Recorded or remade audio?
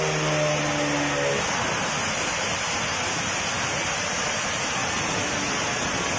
recorded